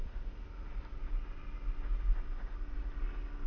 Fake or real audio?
real